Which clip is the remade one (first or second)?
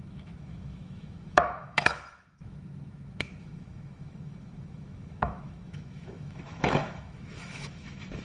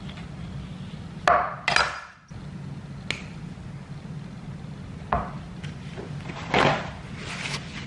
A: first